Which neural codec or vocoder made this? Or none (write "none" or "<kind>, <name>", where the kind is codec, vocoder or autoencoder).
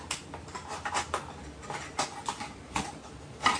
none